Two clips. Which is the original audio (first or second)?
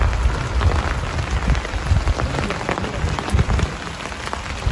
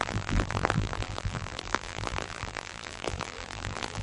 first